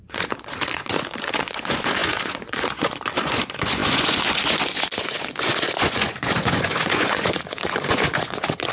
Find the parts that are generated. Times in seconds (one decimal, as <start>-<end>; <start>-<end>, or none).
0.0-8.7